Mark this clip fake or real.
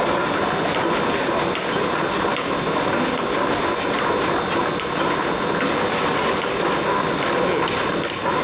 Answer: real